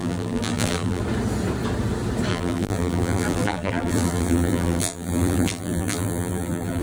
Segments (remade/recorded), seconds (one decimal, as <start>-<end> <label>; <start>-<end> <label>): 0.0-1.0 remade; 1.0-2.3 recorded; 2.3-6.8 remade